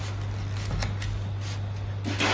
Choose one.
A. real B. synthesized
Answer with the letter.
A